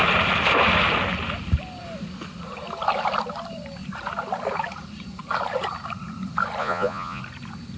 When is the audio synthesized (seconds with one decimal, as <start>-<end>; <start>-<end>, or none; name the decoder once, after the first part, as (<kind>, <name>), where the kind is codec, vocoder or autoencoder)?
6.6-7.2 (vocoder, Vocos)